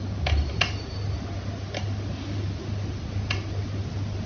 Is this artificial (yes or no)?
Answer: no